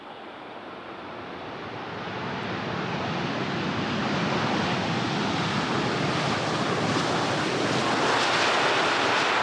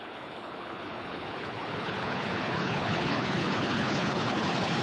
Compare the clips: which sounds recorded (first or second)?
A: first